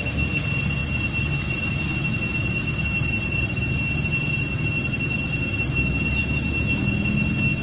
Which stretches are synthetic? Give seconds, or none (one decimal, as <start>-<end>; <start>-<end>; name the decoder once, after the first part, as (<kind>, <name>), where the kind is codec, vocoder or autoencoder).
none